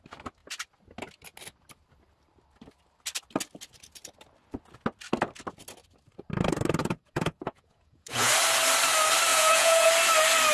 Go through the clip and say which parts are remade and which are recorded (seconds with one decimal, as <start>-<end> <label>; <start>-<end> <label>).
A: 0.0-6.8 recorded; 6.8-8.3 remade; 8.3-9.3 recorded; 9.3-9.9 remade; 9.9-10.5 recorded